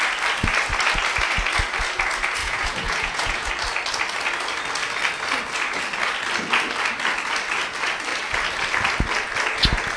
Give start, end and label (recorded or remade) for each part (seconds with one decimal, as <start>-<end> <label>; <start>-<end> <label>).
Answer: 0.0-2.4 recorded; 2.4-3.5 remade; 3.5-10.0 recorded